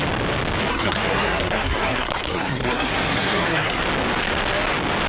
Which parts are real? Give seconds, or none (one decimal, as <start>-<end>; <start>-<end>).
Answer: 0.0-0.7; 3.8-5.1